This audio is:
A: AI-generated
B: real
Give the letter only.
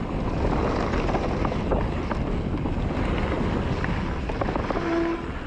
B